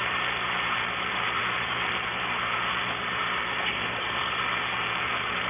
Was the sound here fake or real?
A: fake